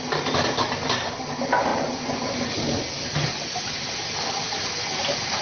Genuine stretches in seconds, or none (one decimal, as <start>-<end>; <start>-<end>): 0.0-5.4